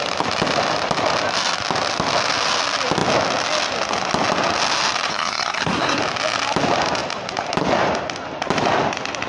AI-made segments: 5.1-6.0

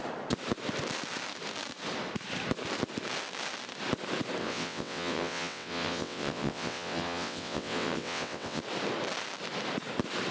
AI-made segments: 4.4-8.6

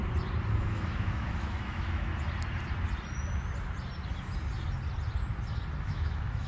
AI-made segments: 0.5-2.1; 5.8-6.5

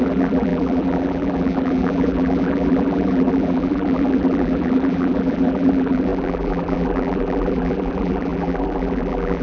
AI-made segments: 0.0-9.4

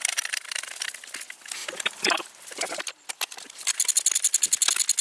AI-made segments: 1.6-2.8

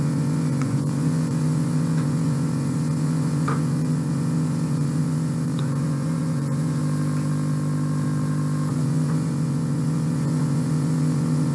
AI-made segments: 0.0-6.8; 8.7-11.5